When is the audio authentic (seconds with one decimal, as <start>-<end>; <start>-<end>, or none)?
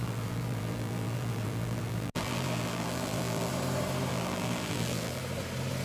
3.5-4.1; 5.2-5.8